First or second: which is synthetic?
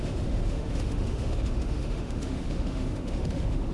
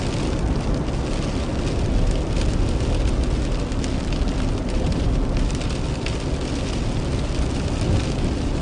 first